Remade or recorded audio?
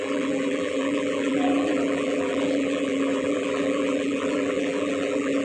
remade